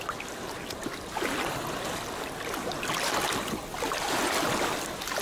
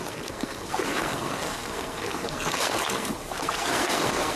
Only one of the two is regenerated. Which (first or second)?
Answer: second